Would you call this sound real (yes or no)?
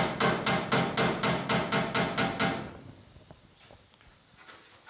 yes